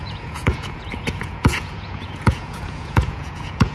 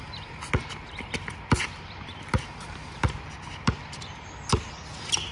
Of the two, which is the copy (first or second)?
first